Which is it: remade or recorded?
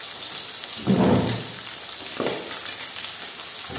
recorded